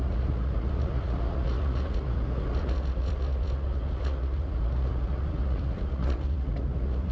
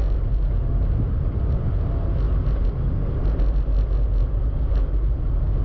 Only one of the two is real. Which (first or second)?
second